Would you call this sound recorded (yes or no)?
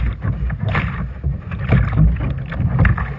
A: yes